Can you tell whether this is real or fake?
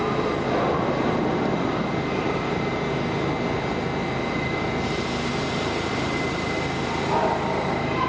real